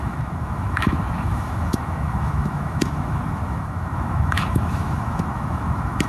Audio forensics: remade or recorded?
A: remade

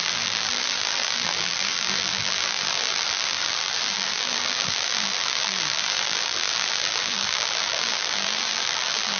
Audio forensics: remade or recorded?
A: remade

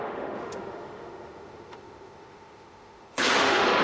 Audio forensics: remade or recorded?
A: remade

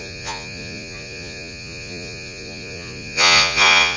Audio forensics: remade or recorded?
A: remade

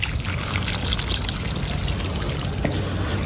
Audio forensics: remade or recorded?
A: recorded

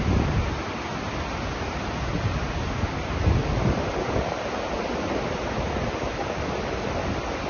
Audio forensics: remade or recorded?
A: recorded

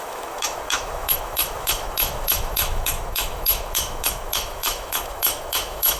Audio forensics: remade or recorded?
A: remade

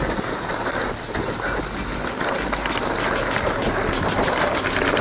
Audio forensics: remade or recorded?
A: recorded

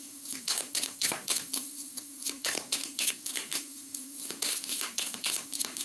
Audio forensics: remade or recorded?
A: remade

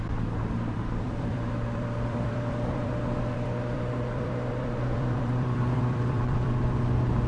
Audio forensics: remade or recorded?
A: remade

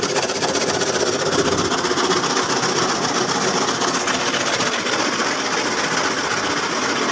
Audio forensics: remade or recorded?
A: recorded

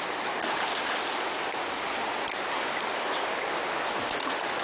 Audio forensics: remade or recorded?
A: recorded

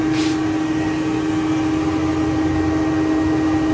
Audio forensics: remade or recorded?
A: recorded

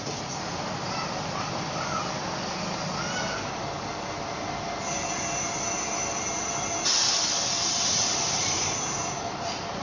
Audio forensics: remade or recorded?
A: recorded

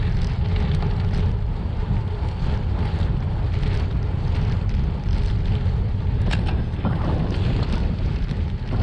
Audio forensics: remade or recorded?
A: recorded